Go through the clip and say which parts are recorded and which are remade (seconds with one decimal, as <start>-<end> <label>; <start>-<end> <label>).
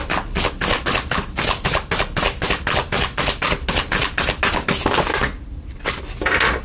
0.0-6.6 recorded